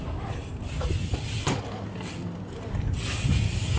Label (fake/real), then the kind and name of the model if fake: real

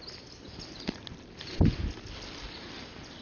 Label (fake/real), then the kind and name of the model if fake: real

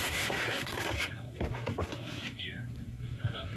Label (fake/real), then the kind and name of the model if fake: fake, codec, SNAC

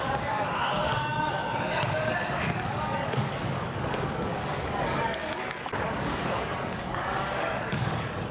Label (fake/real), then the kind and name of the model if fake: fake, codec, DAC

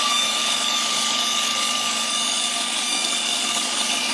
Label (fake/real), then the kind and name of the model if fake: fake, codec, DAC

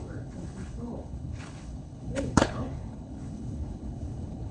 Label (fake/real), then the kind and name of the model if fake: fake, codec, HILCodec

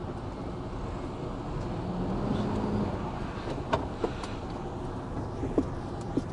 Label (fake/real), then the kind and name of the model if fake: real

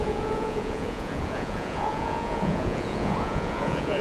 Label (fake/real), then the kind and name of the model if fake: fake, vocoder, Vocos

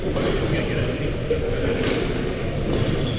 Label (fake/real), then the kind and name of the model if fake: real